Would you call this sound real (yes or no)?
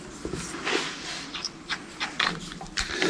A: no